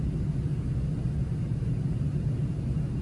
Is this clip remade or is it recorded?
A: recorded